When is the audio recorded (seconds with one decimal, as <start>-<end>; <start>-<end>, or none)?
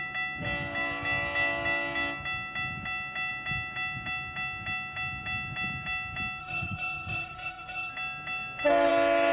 0.0-6.4; 7.9-9.3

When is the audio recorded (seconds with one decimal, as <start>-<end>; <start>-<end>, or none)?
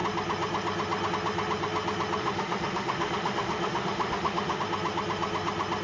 0.0-2.2; 4.6-5.8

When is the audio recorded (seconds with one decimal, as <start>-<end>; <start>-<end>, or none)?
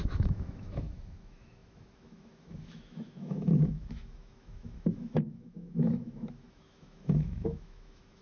none